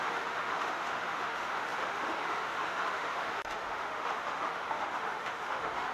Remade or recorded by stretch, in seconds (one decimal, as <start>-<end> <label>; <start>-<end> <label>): 0.0-5.9 remade